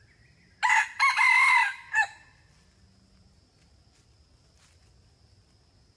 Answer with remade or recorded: recorded